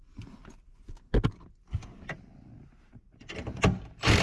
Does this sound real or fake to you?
real